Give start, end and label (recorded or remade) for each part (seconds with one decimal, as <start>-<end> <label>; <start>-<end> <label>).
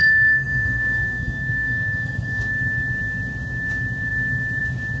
0.0-2.5 remade; 2.5-5.0 recorded